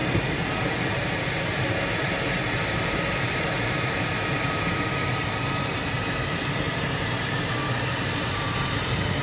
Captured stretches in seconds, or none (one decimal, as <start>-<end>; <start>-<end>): none

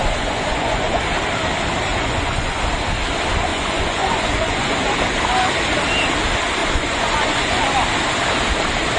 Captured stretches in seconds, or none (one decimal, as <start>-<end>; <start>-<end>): 1.0-1.9; 2.6-3.5; 4.8-6.6; 7.6-9.0

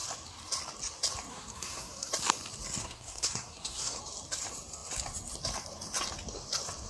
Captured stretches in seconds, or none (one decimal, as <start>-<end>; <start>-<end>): 0.0-1.3; 2.1-2.8; 4.0-6.9

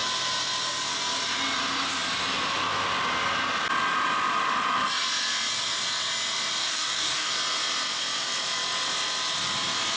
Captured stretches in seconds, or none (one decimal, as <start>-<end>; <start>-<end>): 0.0-6.6; 7.3-10.0

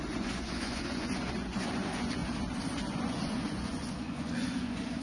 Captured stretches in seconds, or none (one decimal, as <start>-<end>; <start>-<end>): 2.2-2.9

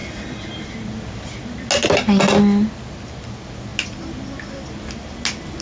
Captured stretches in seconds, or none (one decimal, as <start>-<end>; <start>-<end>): 0.0-5.6